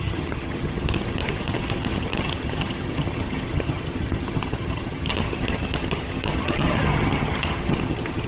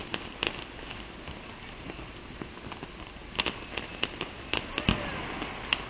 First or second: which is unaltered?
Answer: second